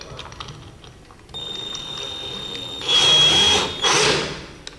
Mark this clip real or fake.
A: real